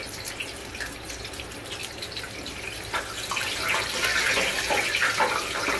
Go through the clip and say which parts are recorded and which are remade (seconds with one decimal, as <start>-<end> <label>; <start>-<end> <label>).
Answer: 0.0-5.8 recorded